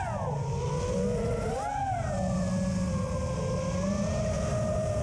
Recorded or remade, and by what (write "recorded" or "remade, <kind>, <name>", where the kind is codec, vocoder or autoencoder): recorded